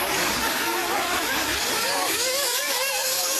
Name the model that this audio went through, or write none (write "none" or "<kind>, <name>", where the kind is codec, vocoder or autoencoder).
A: codec, DAC